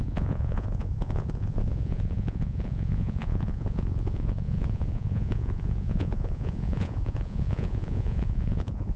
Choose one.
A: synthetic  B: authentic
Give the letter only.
A